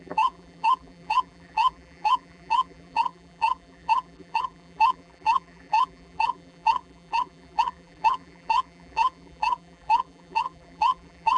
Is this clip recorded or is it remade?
remade